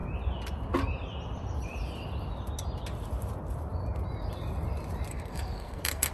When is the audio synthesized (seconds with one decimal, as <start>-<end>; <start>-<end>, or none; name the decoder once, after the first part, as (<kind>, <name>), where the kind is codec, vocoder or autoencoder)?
5.1-6.1 (codec, SNAC)